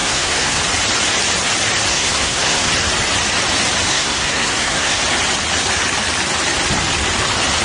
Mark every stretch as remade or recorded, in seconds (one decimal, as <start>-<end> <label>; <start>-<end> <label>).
0.0-0.6 remade; 0.6-1.9 recorded; 1.9-2.7 remade; 2.7-3.9 recorded; 3.9-5.0 remade; 5.0-7.6 recorded